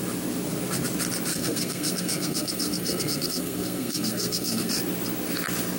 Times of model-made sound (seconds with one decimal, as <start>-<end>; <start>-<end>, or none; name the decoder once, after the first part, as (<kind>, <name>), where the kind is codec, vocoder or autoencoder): 1.3-4.7 (codec, SNAC)